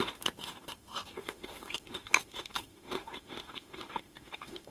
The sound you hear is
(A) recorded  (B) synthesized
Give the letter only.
B